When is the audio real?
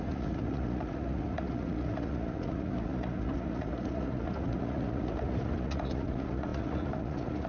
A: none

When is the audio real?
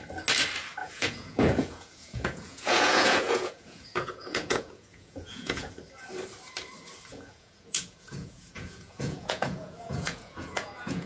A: 0.0-0.8; 5.7-7.1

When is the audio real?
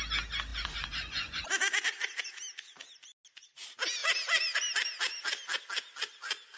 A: 0.0-0.5; 1.4-6.6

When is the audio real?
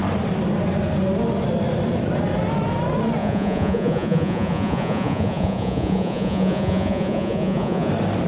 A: 0.0-3.2; 7.9-8.3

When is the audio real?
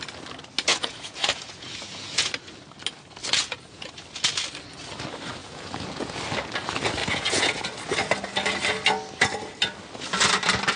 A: 0.0-0.7; 2.3-3.2; 3.9-5.4; 6.1-7.0; 7.6-10.8